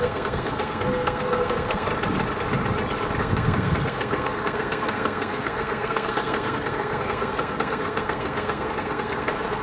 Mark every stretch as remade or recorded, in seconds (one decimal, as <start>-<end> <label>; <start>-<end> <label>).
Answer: 0.0-1.9 remade; 1.9-3.2 recorded; 3.2-9.6 remade